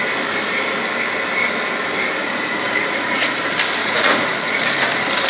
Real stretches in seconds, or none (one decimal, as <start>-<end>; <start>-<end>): 0.0-2.2; 3.3-3.8; 4.6-5.3